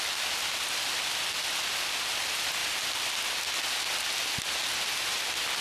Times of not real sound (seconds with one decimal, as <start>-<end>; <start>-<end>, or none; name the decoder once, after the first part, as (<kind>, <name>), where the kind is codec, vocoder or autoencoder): none